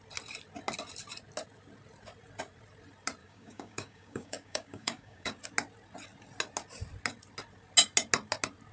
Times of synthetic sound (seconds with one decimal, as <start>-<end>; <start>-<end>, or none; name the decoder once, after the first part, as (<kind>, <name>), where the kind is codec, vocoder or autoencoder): 3.2-5.4 (codec, DAC)